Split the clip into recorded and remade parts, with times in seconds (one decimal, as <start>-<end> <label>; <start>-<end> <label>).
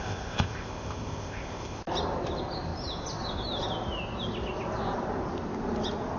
0.0-1.8 remade; 1.8-6.2 recorded